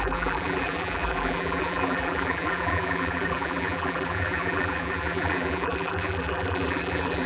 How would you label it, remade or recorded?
remade